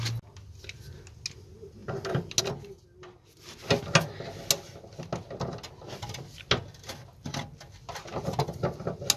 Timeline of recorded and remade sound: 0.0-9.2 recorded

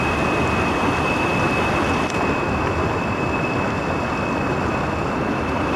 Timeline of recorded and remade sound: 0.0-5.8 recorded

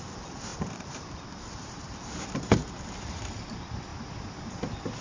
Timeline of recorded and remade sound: 0.0-0.5 recorded; 0.5-3.5 remade; 3.5-5.0 recorded

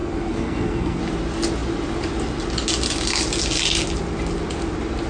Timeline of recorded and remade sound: 0.0-1.0 remade; 1.0-5.1 recorded

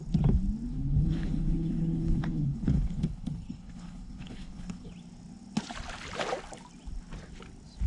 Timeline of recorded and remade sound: 0.0-0.7 recorded; 0.7-4.9 remade; 4.9-7.9 recorded

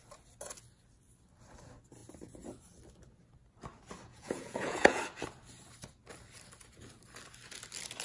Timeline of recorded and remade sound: 0.0-4.1 recorded; 4.1-5.0 remade; 5.0-8.0 recorded

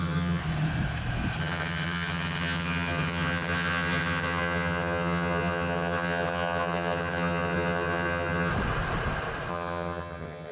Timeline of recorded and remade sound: 0.0-0.4 remade; 0.4-1.4 recorded; 1.4-8.5 remade; 8.5-9.5 recorded; 9.5-10.5 remade

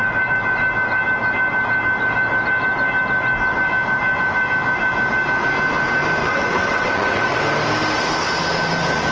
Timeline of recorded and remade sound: 0.0-6.2 recorded; 6.2-7.4 remade; 7.4-9.1 recorded